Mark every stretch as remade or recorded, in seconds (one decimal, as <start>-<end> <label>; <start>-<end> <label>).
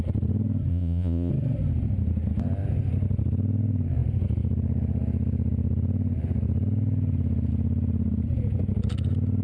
0.0-0.7 recorded; 0.7-1.3 remade; 1.3-9.4 recorded